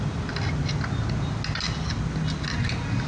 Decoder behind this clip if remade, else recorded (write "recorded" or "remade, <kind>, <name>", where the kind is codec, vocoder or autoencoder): recorded